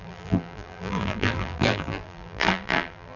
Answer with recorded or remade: remade